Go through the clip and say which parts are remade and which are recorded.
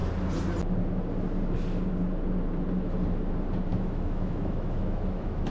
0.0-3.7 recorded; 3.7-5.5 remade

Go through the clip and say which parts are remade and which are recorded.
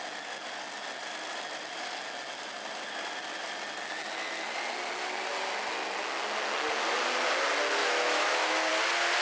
0.0-7.8 recorded; 7.8-8.7 remade; 8.7-9.2 recorded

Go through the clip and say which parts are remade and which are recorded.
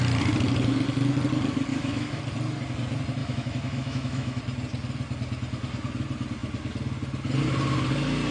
0.0-1.7 recorded; 1.7-2.2 remade; 2.2-3.2 recorded; 3.2-4.4 remade; 4.4-8.3 recorded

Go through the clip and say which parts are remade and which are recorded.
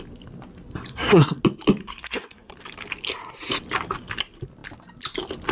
0.0-0.9 recorded; 0.9-1.4 remade; 1.4-1.8 recorded; 1.8-2.5 remade; 2.5-5.5 recorded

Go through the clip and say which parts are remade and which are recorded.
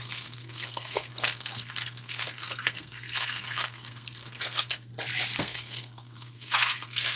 0.0-4.9 remade; 4.9-5.4 recorded; 5.4-7.2 remade